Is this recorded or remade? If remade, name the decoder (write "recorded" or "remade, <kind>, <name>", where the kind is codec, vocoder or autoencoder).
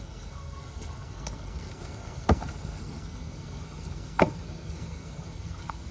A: remade, codec, SNAC